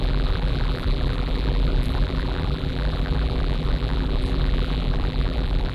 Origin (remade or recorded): remade